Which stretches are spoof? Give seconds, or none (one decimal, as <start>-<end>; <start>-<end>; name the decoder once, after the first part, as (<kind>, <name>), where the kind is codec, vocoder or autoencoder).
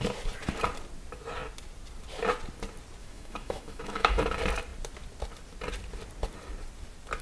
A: 3.0-4.2 (autoencoder, DAC-VAE)